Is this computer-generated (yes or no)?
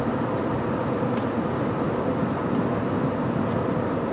no